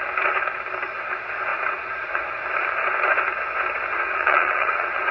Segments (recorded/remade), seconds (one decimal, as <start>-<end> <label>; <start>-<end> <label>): 0.0-1.5 recorded; 1.5-2.2 remade; 2.2-3.9 recorded; 3.9-5.1 remade